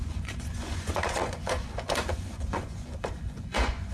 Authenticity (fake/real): fake